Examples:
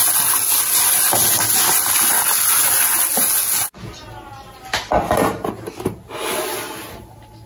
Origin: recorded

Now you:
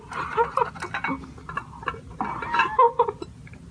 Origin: recorded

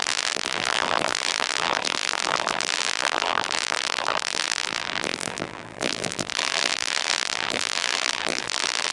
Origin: remade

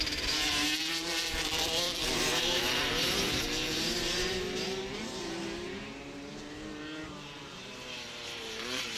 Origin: remade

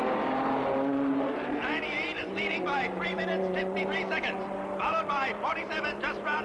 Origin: remade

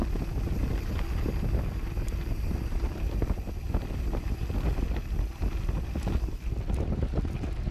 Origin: recorded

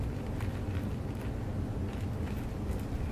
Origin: recorded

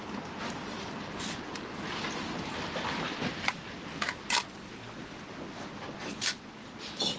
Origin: recorded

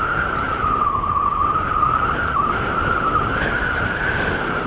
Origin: remade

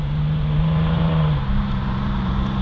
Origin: remade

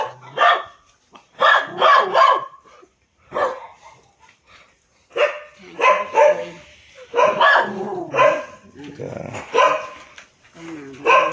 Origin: recorded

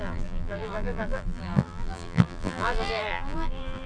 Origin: remade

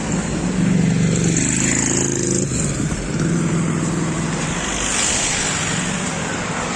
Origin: recorded